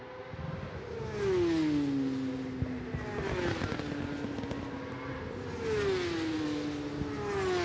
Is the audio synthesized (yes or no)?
no